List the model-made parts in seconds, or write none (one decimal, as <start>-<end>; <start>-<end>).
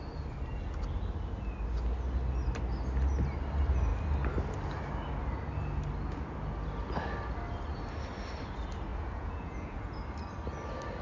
8.9-10.0